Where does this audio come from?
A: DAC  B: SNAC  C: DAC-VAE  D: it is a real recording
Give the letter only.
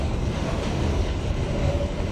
A